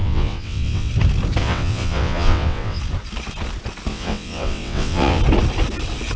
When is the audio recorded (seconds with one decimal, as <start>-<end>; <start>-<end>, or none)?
0.9-1.4; 2.8-3.9; 5.2-6.2